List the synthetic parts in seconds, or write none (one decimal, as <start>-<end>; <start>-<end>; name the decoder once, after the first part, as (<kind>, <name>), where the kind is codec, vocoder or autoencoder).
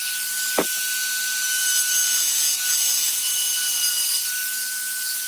none